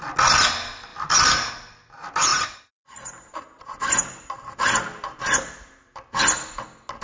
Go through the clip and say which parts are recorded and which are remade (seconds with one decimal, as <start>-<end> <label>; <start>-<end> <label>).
0.0-2.3 recorded; 2.3-6.2 remade; 6.2-7.0 recorded